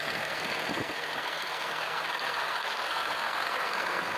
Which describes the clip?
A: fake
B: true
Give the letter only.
A